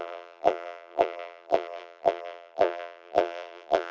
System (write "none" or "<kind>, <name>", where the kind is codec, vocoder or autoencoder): vocoder, BigVGAN v2